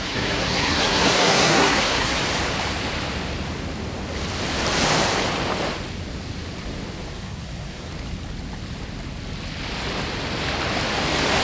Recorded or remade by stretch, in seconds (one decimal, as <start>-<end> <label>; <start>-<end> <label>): 0.0-2.2 remade; 2.2-7.1 recorded; 7.1-7.9 remade; 7.9-11.4 recorded